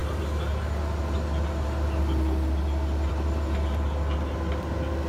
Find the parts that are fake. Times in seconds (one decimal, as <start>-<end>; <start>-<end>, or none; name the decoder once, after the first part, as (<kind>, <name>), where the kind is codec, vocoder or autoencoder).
none